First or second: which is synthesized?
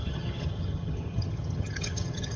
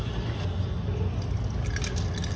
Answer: first